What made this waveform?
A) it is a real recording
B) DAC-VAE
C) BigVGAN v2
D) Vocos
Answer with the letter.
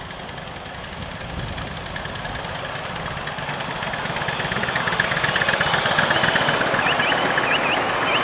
A